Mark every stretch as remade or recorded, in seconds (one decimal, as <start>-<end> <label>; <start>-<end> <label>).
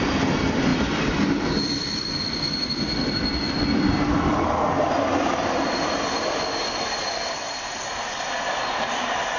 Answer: 0.0-9.4 recorded